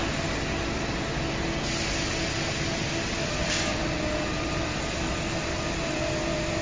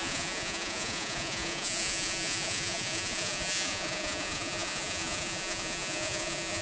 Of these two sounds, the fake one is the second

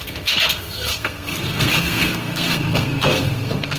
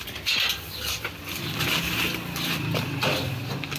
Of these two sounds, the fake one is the first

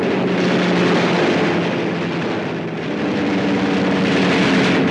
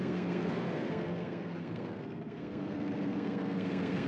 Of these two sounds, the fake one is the second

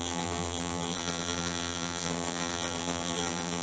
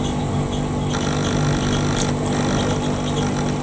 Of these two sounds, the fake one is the first